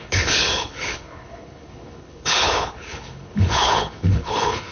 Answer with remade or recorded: remade